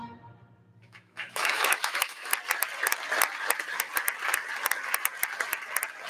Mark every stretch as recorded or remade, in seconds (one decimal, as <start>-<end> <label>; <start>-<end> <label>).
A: 0.0-0.8 recorded; 0.8-2.3 remade; 2.3-6.1 recorded